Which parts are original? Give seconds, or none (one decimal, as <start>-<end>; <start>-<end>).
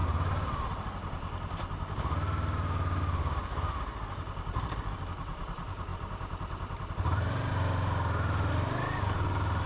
0.0-4.9; 7.5-9.7